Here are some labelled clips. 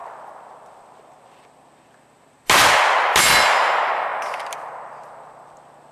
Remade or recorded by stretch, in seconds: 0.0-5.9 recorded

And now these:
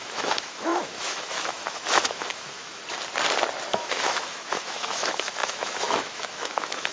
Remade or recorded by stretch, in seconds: 0.0-2.8 remade; 2.8-3.7 recorded; 3.7-6.9 remade

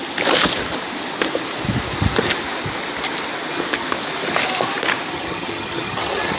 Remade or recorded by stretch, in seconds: 0.0-5.1 recorded; 5.1-6.4 remade

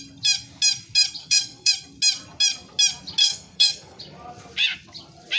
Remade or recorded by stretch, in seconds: 0.0-1.2 recorded; 1.2-1.7 remade; 1.7-3.2 recorded; 3.2-4.0 remade; 4.0-5.4 recorded

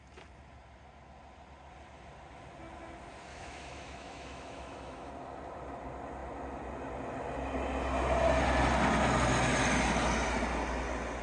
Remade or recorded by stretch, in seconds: 0.0-3.3 recorded; 3.3-5.1 remade; 5.1-11.2 recorded

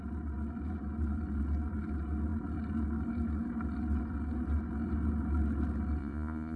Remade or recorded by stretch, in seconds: 0.0-6.0 recorded; 6.0-6.6 remade

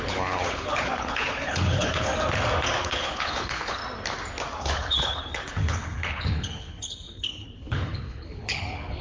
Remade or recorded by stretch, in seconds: 0.0-2.1 remade; 2.1-2.8 recorded; 2.8-3.8 remade; 3.8-4.6 recorded; 4.6-9.0 remade